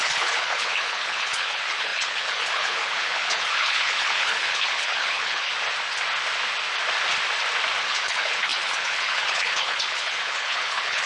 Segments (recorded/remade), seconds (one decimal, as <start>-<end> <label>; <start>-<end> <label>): 0.0-5.5 remade; 5.5-7.8 recorded; 7.8-11.1 remade